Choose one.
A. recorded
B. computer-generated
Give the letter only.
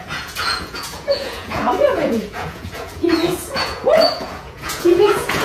B